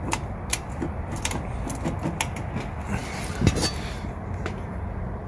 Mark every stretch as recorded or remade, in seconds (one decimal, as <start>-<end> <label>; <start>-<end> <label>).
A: 0.0-5.3 recorded